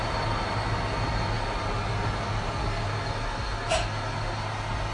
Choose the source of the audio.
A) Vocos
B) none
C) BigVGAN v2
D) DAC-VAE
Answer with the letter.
B